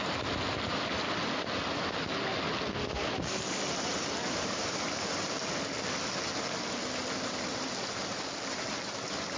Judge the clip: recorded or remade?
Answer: recorded